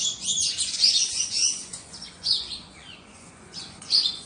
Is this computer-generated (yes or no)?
yes